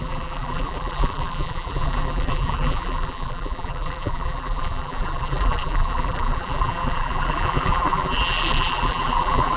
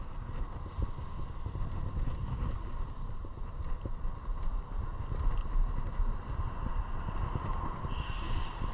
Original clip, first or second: second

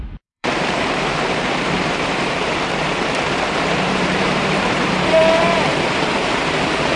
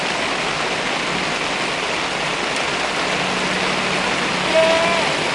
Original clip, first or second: second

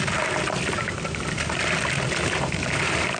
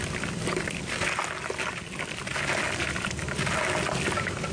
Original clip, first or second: second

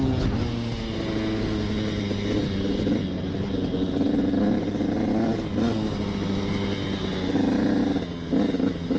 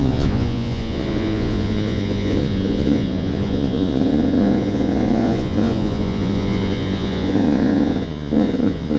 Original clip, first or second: first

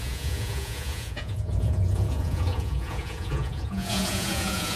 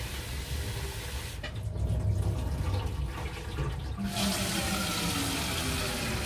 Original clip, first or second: second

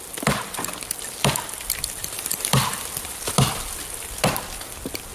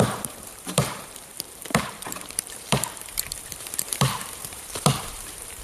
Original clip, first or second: first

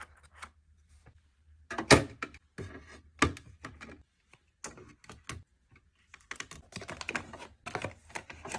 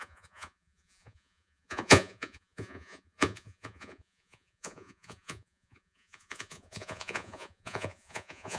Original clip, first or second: first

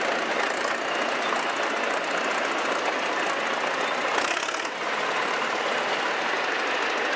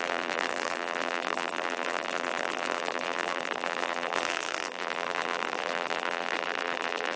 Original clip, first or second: first